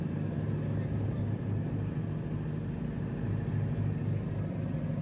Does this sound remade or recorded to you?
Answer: recorded